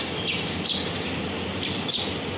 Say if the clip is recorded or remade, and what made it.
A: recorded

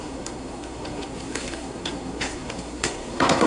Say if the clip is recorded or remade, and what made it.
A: remade, codec, SNAC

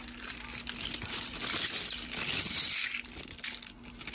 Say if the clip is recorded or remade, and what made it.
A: recorded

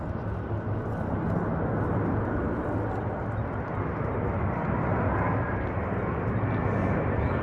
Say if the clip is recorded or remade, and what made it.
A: recorded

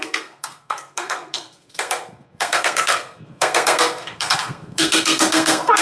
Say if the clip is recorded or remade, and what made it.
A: remade, codec, SNAC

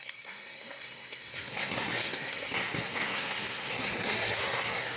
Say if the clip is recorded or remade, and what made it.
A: remade, codec, SNAC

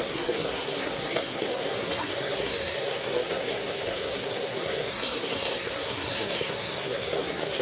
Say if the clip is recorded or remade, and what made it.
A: remade, codec, SNAC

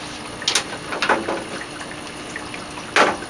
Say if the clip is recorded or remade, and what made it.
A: recorded